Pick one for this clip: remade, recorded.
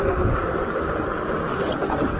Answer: recorded